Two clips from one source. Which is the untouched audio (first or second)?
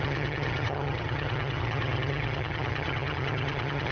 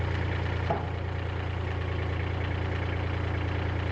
second